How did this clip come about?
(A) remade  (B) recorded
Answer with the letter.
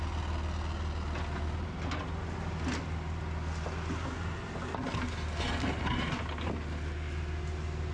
B